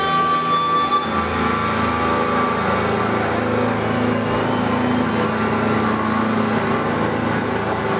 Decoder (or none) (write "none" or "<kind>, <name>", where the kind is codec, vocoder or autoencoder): none